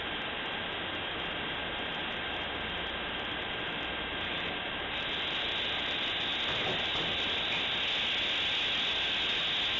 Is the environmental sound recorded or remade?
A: recorded